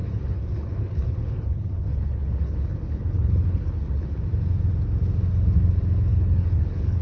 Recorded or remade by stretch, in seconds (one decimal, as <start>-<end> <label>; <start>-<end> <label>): 0.0-4.2 remade; 4.2-6.1 recorded; 6.1-7.0 remade